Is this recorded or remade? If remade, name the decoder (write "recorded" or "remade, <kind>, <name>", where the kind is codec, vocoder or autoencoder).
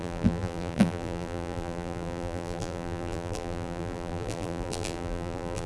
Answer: remade, vocoder, BigVGAN v2